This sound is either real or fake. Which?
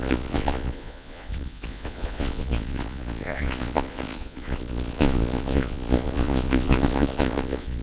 fake